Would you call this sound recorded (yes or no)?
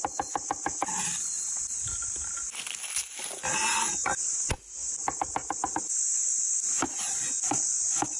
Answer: yes